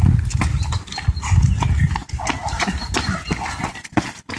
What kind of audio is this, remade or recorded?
recorded